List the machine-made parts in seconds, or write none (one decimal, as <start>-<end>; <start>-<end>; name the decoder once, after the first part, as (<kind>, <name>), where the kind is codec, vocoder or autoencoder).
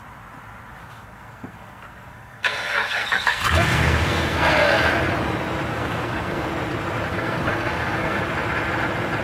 0.8-4.9 (codec, SNAC); 5.7-6.5; 7.1-8.2